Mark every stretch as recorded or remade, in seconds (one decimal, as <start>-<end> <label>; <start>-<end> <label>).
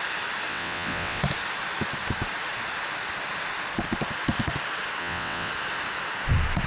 0.0-0.5 recorded; 0.5-1.2 remade; 1.2-5.0 recorded; 5.0-5.5 remade; 5.5-6.7 recorded